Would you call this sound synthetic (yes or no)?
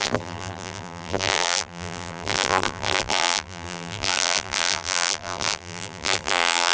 yes